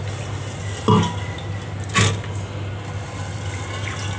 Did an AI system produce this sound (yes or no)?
no